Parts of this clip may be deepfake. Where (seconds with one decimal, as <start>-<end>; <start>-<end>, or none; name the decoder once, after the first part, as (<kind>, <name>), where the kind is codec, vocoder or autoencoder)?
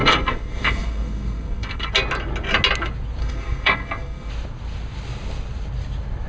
0.0-1.9 (codec, SNAC); 3.2-4.3